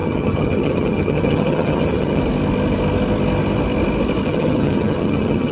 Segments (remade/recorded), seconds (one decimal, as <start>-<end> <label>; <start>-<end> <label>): 0.0-2.2 remade; 2.2-4.2 recorded; 4.2-5.5 remade